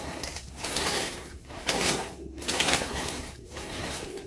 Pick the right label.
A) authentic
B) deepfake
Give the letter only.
B